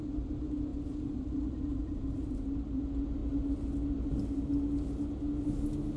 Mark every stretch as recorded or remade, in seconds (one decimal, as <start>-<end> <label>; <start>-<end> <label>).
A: 0.0-0.7 recorded; 0.7-2.8 remade; 2.8-6.0 recorded